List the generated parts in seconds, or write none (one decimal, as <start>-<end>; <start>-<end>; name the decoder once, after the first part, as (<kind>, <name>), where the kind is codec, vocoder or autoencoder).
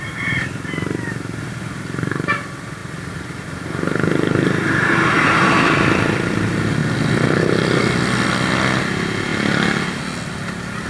2.8-6.2 (vocoder, BigVGAN v2)